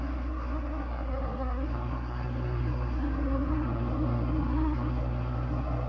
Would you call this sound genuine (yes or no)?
no